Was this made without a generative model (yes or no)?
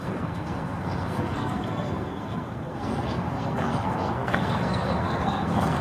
no